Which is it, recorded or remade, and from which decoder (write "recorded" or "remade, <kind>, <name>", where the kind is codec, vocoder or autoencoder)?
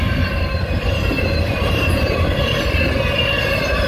remade, vocoder, BigVGAN v2